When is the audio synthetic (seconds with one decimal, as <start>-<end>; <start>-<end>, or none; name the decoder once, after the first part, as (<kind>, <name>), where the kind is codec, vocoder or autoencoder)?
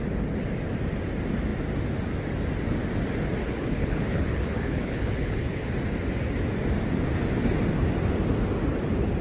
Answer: 3.4-5.7 (codec, HILCodec)